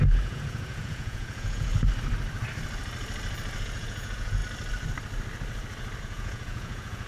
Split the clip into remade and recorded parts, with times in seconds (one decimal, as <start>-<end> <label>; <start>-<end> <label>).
0.0-1.7 remade; 1.7-3.6 recorded; 3.6-4.4 remade; 4.4-6.0 recorded; 6.0-7.1 remade